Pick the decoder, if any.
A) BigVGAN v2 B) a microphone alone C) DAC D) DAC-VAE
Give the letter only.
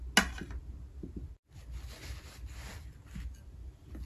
B